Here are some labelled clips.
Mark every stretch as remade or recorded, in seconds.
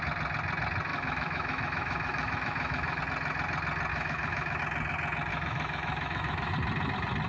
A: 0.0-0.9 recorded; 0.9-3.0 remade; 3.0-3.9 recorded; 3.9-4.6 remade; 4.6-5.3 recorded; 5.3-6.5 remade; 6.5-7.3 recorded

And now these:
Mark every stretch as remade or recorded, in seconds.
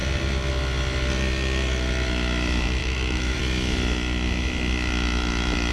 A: 0.0-2.8 recorded; 2.8-3.4 remade; 3.4-5.7 recorded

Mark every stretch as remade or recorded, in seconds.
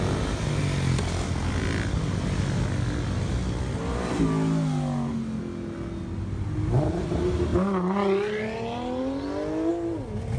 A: 0.0-10.4 recorded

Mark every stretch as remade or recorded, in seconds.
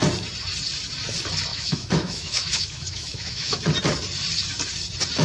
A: 0.0-1.5 recorded; 1.5-3.6 remade; 3.6-5.2 recorded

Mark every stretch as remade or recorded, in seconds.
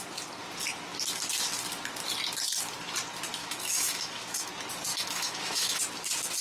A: 0.0-3.4 recorded; 3.4-4.5 remade; 4.5-4.9 recorded; 4.9-5.8 remade; 5.8-6.4 recorded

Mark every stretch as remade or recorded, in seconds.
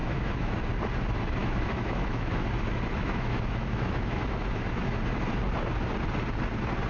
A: 0.0-0.6 remade; 0.6-1.4 recorded; 1.4-5.0 remade; 5.0-6.9 recorded